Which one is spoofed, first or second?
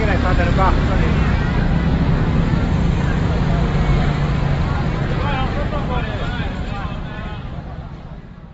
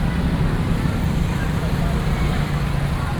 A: second